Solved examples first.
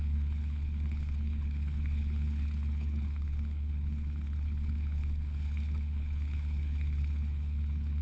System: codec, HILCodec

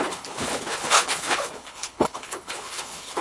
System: codec, HILCodec